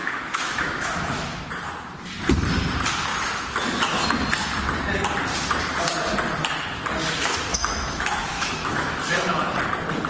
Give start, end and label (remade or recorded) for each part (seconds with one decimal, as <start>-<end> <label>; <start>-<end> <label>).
0.0-1.5 remade; 1.5-7.5 recorded; 7.5-9.5 remade; 9.5-10.1 recorded